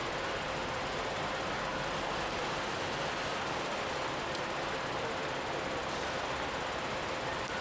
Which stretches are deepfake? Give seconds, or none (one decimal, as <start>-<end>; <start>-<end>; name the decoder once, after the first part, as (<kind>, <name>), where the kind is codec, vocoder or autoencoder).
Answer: 0.0-0.5 (vocoder, BigVGAN v2)